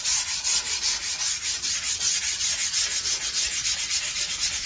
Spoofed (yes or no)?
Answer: no